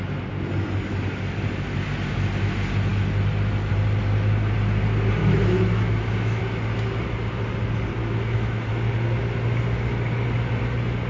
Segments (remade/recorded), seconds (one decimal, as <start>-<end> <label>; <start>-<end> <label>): 0.0-5.2 recorded; 5.2-6.4 remade; 6.4-8.0 recorded; 8.0-8.7 remade; 8.7-11.1 recorded